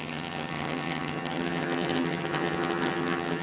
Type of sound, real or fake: fake